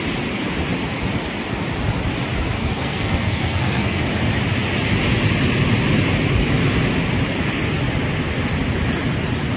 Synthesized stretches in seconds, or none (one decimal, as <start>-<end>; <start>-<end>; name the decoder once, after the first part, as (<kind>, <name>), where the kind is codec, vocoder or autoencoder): 2.6-4.0 (codec, SNAC)